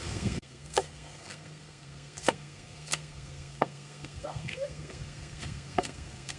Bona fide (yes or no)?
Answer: no